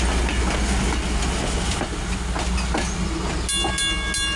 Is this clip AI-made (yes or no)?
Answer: no